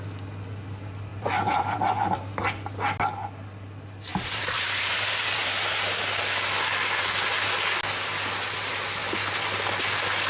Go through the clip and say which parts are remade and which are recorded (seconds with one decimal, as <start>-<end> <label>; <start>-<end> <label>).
0.0-1.1 recorded; 1.1-2.3 remade; 2.3-4.1 recorded; 4.1-5.9 remade; 5.9-10.3 recorded